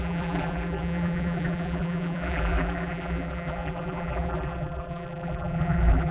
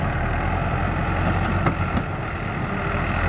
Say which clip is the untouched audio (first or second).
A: second